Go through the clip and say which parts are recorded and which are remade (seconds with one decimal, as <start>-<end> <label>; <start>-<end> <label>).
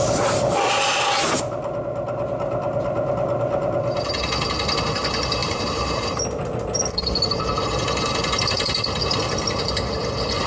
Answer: 0.0-5.4 recorded; 5.4-6.2 remade; 6.2-10.5 recorded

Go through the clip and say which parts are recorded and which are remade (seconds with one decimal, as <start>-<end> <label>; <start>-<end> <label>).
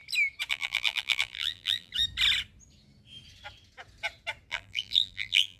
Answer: 0.0-0.5 recorded; 0.5-1.9 remade; 1.9-4.5 recorded; 4.5-5.6 remade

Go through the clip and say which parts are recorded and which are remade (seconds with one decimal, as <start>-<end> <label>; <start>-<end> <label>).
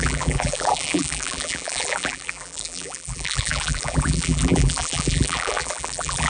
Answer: 0.0-6.3 remade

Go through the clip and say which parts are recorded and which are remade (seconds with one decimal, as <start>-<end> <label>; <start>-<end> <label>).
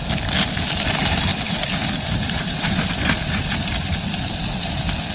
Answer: 0.0-0.9 remade; 0.9-1.3 recorded; 1.3-4.4 remade; 4.4-5.1 recorded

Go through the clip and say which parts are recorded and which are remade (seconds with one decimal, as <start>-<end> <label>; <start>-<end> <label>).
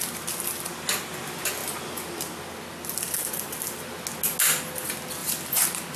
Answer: 0.0-5.2 recorded; 5.2-6.0 remade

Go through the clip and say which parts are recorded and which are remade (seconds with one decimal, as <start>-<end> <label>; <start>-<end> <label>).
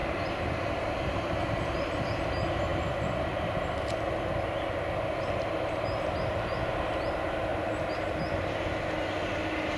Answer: 0.0-2.2 remade; 2.2-9.8 recorded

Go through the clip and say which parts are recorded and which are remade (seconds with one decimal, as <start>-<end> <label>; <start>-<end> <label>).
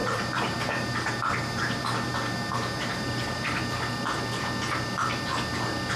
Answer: 0.0-3.6 remade; 3.6-6.0 recorded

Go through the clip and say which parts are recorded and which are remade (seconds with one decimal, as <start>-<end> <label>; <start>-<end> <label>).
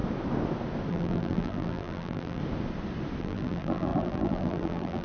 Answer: 0.0-0.9 recorded; 0.9-2.4 remade; 2.4-3.2 recorded; 3.2-5.0 remade